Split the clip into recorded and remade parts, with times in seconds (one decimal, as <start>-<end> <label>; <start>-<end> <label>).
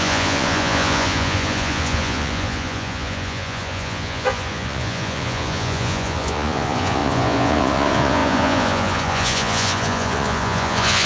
0.0-11.1 remade